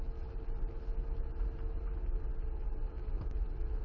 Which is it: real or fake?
real